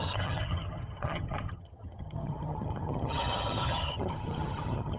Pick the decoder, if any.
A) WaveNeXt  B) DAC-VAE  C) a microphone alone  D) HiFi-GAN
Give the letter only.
D